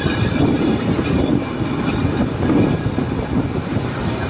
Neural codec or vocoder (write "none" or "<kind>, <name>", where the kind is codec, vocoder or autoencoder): none